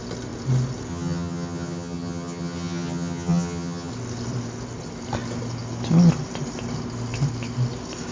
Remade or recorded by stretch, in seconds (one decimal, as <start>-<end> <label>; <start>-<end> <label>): 0.0-0.9 recorded; 0.9-3.9 remade; 3.9-8.1 recorded